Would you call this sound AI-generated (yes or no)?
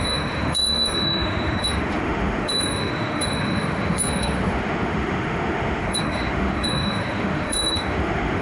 yes